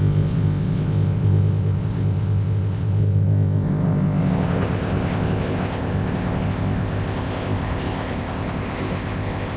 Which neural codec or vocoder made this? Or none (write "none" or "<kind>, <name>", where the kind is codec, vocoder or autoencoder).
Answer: codec, ZipCodec